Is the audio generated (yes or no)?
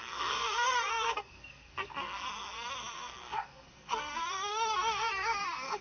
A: yes